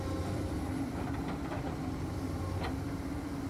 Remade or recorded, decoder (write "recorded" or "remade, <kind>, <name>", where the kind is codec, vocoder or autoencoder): remade, vocoder, BigVGAN v2